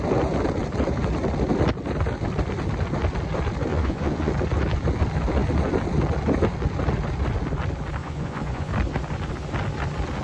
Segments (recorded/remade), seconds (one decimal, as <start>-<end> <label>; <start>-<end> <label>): 0.0-3.7 recorded; 3.7-4.3 remade; 4.3-8.0 recorded; 8.0-8.7 remade; 8.7-10.2 recorded